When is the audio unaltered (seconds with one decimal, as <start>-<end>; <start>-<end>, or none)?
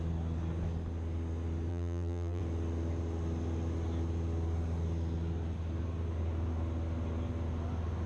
0.0-1.7; 2.4-8.1